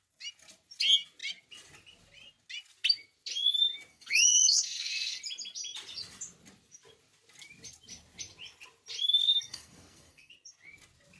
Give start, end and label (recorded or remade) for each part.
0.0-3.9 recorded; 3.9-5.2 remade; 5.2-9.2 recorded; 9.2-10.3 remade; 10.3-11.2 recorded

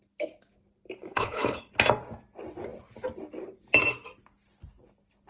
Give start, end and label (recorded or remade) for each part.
0.0-1.0 recorded; 1.0-1.7 remade; 1.7-5.3 recorded

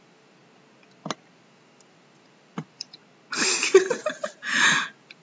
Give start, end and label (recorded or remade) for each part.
0.0-0.4 remade; 0.4-1.3 recorded; 1.3-3.0 remade; 3.0-4.6 recorded; 4.6-5.2 remade